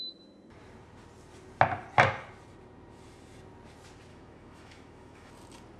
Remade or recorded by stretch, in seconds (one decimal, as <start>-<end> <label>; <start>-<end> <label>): 0.0-4.1 recorded; 4.1-5.3 remade; 5.3-5.8 recorded